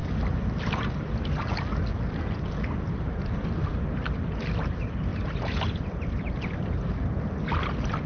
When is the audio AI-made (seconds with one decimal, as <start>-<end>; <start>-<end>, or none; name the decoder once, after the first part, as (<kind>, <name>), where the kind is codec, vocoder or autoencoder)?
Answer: none